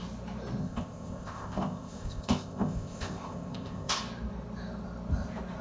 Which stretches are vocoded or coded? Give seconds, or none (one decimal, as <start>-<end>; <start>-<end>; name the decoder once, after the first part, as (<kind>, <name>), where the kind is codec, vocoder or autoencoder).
0.6-4.0 (codec, ZipCodec)